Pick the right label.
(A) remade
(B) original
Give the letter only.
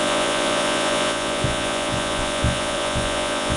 A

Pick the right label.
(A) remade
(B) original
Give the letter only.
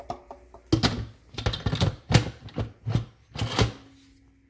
B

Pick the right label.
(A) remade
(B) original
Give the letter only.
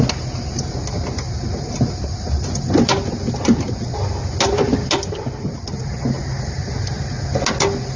B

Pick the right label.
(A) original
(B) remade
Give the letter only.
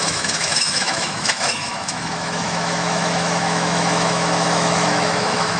B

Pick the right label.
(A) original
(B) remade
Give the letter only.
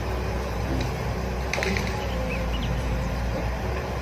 B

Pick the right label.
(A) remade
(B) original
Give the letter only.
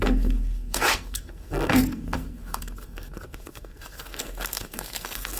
A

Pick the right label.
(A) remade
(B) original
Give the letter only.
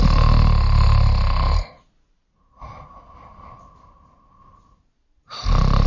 B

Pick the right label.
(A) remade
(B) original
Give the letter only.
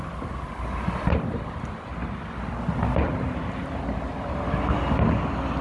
B